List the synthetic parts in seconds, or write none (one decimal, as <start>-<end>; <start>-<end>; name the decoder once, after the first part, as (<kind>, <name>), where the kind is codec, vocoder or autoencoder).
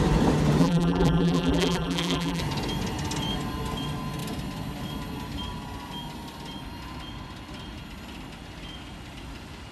0.6-2.4 (vocoder, BigVGAN v2)